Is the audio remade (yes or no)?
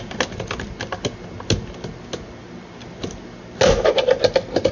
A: no